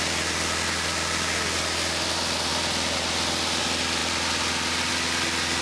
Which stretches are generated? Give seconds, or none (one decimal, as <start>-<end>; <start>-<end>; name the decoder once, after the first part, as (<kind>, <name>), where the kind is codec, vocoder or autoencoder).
none